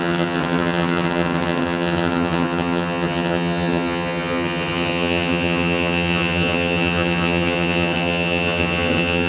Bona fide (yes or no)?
no